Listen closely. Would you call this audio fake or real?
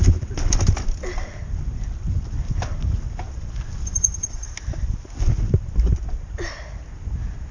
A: real